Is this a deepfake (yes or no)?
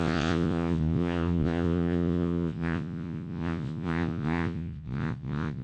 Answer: yes